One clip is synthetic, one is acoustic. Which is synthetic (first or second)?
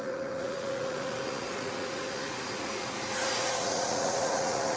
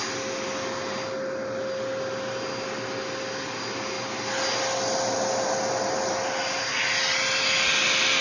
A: first